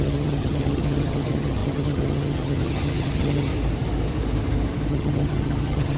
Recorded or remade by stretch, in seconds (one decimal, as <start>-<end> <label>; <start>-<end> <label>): 0.0-3.5 remade; 3.5-4.9 recorded; 4.9-6.0 remade